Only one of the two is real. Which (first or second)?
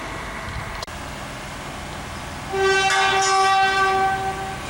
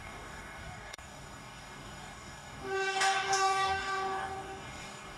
first